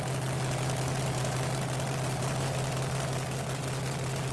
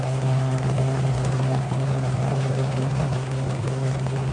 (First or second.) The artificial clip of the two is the second